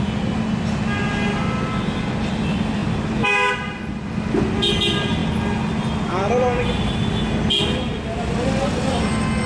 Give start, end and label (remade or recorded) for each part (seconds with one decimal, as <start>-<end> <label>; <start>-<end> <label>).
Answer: 0.0-9.5 recorded